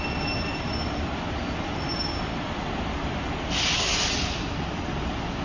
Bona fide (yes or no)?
yes